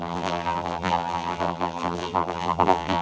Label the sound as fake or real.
fake